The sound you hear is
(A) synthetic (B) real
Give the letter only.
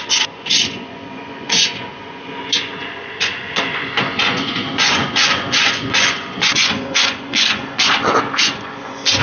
A